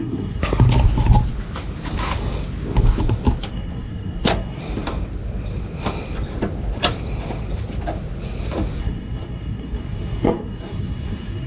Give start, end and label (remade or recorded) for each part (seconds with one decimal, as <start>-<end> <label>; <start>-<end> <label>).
0.0-0.4 remade; 0.4-3.5 recorded; 3.5-4.6 remade; 4.6-8.8 recorded; 8.8-11.5 remade